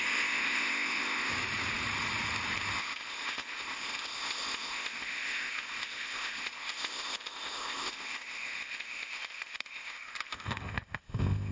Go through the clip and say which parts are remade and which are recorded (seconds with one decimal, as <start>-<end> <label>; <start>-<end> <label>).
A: 0.0-1.3 remade; 1.3-2.8 recorded; 2.8-11.5 remade